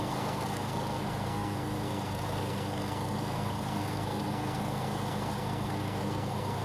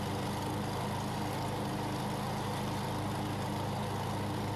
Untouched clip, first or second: second